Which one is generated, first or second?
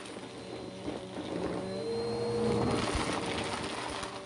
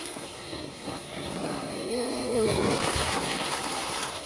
second